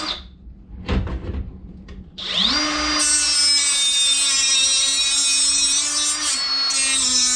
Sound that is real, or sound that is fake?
real